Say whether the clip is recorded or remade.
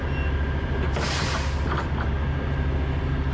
recorded